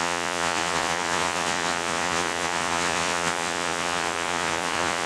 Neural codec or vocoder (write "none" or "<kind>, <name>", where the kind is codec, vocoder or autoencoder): vocoder, Vocos